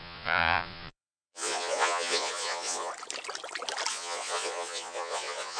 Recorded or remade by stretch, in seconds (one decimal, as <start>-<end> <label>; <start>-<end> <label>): 0.0-2.9 remade; 2.9-3.9 recorded; 3.9-5.6 remade